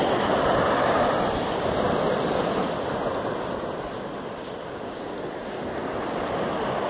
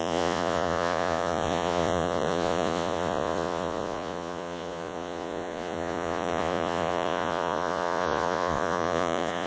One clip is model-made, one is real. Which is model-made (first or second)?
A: second